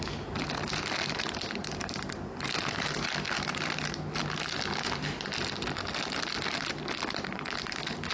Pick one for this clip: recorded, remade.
recorded